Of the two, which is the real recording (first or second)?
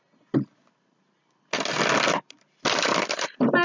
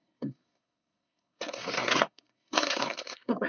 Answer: first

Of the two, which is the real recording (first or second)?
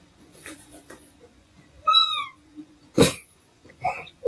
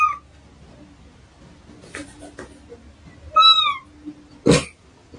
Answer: second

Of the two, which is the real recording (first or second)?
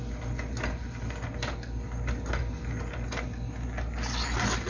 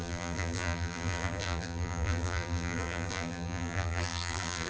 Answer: first